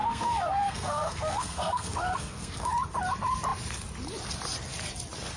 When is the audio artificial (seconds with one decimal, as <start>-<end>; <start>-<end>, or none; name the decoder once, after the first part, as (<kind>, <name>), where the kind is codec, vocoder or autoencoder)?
0.0-2.7 (codec, SNAC)